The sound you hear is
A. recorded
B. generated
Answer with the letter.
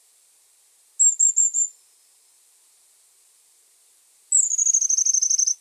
A